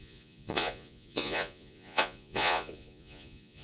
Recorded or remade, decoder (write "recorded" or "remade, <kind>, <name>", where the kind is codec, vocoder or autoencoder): remade, vocoder, Vocos